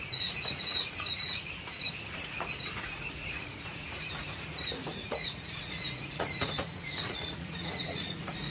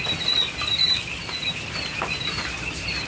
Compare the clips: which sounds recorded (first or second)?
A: second